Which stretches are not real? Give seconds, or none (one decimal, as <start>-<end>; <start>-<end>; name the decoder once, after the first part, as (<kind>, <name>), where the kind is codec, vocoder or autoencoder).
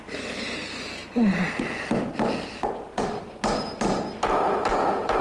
none